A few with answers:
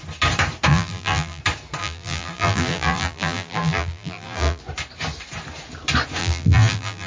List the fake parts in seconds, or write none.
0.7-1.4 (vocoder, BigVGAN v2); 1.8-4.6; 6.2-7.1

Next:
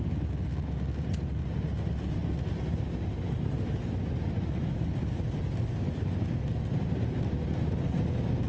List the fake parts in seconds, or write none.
none

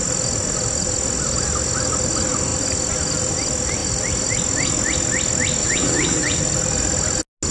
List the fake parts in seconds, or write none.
5.6-6.4 (vocoder, WaveNeXt)

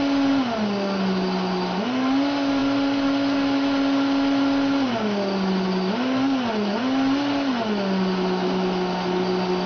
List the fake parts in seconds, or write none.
none